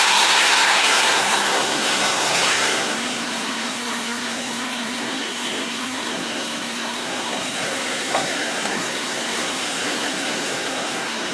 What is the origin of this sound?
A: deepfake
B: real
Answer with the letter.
A